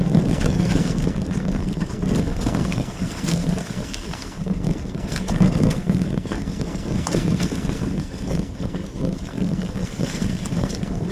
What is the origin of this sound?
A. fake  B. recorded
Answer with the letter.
A